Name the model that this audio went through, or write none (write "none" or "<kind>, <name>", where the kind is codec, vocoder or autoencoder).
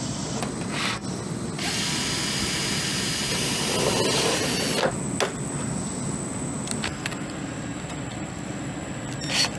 none